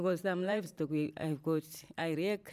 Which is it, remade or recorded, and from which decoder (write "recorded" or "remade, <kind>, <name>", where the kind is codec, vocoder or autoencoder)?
remade, vocoder, BigVGAN v2